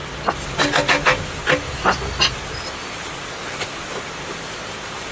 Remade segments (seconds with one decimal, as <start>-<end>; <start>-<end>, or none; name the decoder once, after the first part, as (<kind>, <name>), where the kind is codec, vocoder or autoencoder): none